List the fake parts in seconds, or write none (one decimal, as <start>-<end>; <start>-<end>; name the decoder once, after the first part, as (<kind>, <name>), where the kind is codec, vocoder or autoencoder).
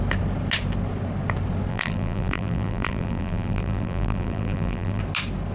1.7-5.0 (vocoder, BigVGAN v2)